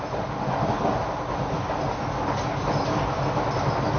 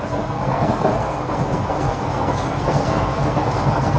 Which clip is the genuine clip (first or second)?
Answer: first